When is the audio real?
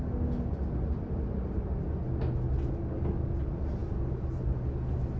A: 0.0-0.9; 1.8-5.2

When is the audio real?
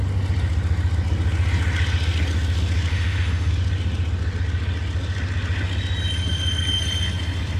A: 0.0-2.9; 3.5-7.6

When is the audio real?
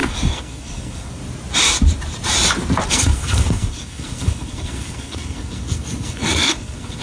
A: 1.2-2.9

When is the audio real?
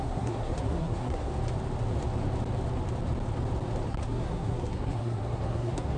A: 1.3-3.9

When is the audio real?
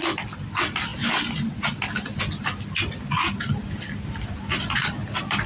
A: 0.0-5.5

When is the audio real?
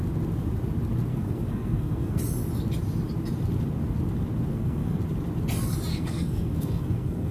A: 0.0-1.1; 2.2-4.5; 5.0-5.9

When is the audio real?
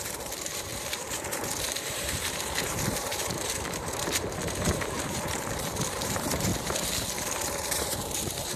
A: 6.5-7.5